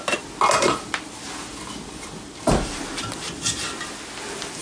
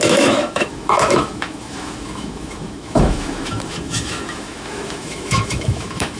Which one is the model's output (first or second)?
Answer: second